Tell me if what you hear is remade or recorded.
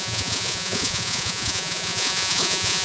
remade